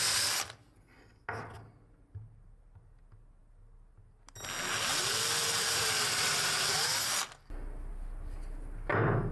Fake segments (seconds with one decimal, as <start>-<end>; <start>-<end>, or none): none